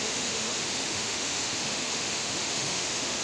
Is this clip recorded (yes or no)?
no